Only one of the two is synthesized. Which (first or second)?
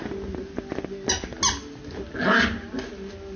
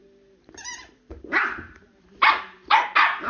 second